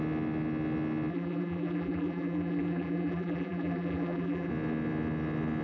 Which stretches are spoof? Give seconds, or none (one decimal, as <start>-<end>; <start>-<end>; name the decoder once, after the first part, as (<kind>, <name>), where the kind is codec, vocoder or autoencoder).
1.1-4.5 (vocoder, BigVGAN v2)